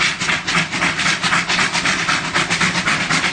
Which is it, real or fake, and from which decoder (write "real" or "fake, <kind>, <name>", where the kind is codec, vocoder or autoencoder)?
real